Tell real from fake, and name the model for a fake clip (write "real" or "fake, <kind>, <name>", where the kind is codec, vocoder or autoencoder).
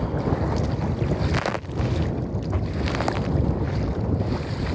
real